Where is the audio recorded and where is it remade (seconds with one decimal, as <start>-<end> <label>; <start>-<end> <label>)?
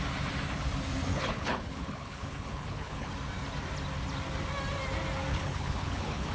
0.0-1.1 recorded; 1.1-3.1 remade; 3.1-5.3 recorded; 5.3-6.3 remade